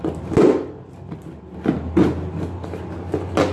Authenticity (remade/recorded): recorded